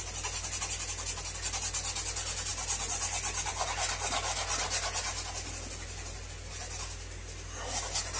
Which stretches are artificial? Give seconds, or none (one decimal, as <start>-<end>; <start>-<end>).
none